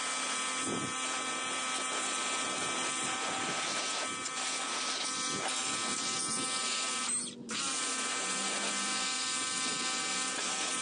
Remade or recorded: recorded